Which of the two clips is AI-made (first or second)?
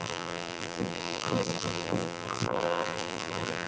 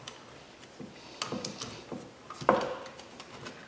first